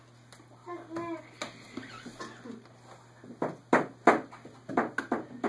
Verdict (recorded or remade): recorded